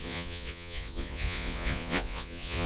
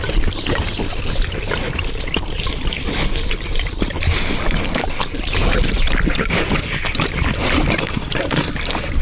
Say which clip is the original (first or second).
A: second